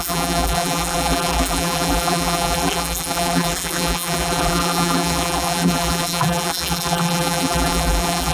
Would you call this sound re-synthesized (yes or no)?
yes